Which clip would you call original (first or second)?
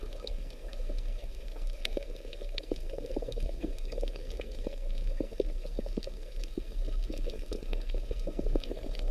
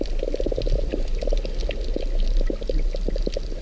second